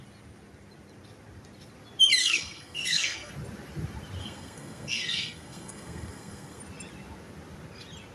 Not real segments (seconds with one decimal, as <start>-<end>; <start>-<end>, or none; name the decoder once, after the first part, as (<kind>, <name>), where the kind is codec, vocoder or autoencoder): 2.2-3.3 (codec, SNAC); 4.2-6.6